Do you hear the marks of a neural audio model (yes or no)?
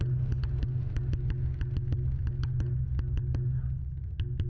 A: no